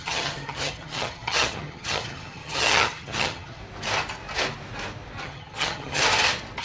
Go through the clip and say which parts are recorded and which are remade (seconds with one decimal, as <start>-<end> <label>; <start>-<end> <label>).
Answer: 0.0-3.6 remade; 3.6-5.2 recorded; 5.2-6.0 remade; 6.0-6.6 recorded